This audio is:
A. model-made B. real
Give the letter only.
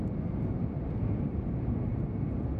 B